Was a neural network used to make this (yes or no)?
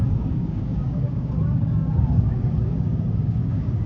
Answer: yes